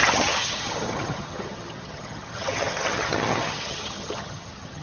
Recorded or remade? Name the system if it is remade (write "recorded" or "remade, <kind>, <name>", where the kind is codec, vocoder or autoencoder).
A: remade, vocoder, HiFi-GAN